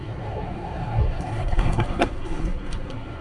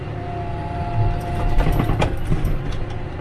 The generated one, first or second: first